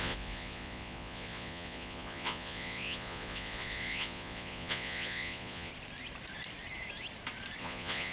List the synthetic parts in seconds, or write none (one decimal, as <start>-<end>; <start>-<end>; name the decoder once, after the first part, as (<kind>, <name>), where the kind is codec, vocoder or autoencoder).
0.0-5.7 (vocoder, Vocos); 7.6-8.1